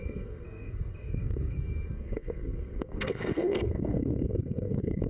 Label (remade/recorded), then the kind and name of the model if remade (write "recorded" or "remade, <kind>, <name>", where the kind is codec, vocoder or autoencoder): remade, codec, SNAC